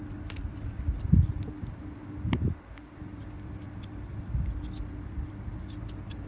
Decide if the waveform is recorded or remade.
recorded